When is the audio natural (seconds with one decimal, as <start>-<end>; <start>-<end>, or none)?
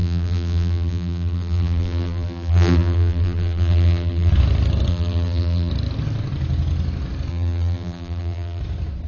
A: 4.3-4.9; 5.7-7.3; 8.6-9.1